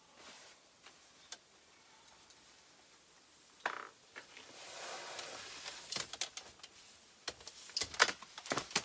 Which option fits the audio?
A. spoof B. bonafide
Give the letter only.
B